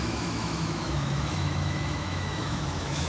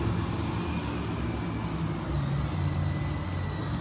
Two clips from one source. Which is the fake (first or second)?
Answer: first